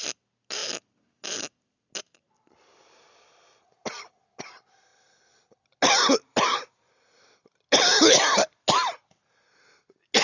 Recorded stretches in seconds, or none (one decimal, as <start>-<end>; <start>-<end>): 0.0-10.2